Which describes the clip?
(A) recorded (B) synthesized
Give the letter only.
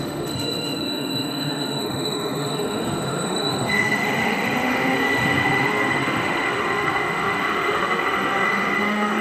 B